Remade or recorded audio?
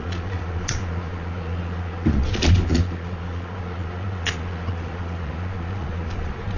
remade